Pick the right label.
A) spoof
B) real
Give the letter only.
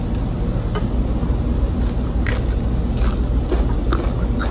B